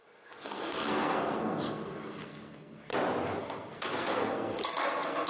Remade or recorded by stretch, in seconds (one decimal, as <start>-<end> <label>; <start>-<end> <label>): 0.0-2.9 remade; 2.9-3.4 recorded; 3.4-5.3 remade